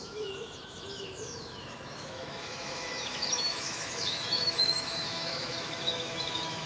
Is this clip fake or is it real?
fake